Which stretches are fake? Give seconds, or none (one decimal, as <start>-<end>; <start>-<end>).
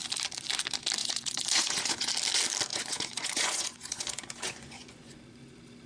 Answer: 1.0-2.1; 2.7-5.2